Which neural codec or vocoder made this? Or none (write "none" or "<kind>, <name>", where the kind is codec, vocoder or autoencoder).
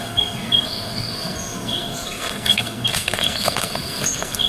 codec, SNAC